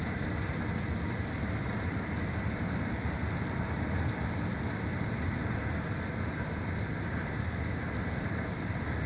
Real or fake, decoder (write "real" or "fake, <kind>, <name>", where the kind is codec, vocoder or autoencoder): real